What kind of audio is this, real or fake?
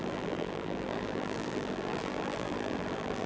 fake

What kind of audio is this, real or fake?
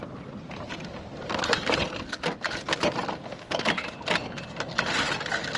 real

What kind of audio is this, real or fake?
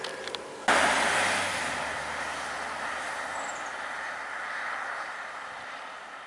real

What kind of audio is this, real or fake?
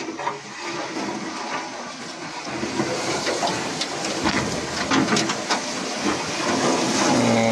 real